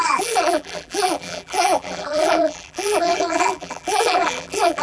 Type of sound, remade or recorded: remade